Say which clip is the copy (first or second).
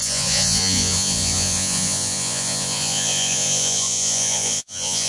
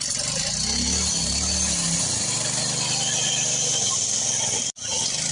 first